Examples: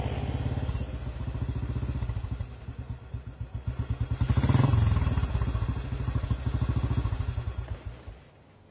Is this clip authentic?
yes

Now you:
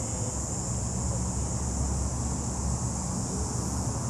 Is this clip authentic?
yes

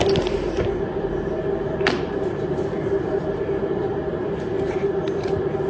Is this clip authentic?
yes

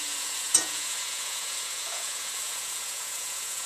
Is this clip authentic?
no